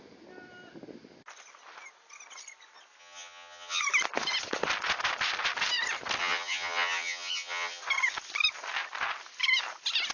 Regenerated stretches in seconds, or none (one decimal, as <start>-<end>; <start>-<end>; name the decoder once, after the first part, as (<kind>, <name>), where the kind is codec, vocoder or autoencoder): 3.0-3.8 (vocoder, HiFi-GAN); 6.2-7.8